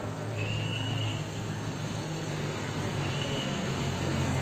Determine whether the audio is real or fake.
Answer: fake